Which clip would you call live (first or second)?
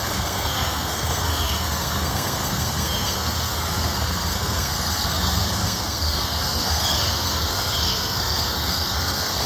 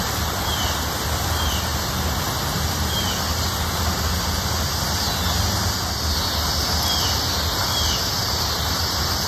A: second